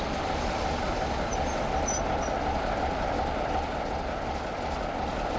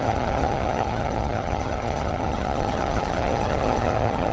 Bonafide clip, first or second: first